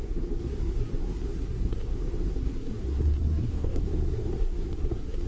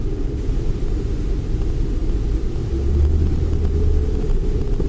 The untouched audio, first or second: second